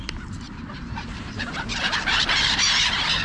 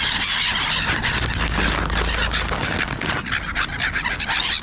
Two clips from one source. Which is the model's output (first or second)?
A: first